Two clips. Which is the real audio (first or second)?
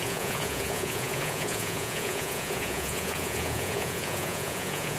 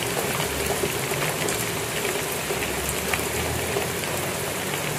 second